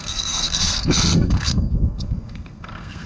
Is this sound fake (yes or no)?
yes